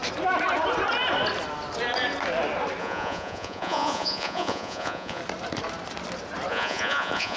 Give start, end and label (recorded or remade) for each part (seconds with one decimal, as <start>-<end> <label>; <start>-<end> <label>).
0.0-2.8 recorded; 2.8-5.2 remade; 5.2-6.5 recorded; 6.5-7.4 remade